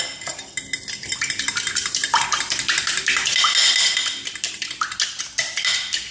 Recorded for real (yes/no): yes